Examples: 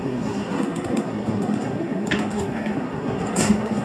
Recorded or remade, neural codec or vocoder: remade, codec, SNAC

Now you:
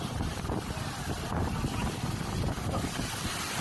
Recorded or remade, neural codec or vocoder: recorded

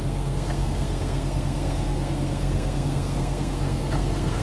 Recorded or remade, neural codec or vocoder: remade, codec, SNAC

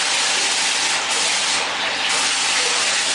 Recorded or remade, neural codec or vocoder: recorded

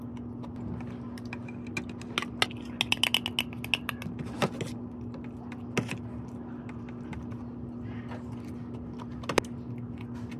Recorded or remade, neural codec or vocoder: recorded